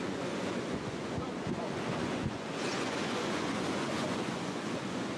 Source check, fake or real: fake